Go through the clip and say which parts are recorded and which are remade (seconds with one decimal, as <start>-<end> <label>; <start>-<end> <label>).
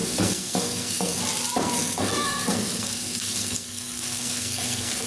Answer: 0.0-1.2 remade; 1.2-1.6 recorded; 1.6-5.1 remade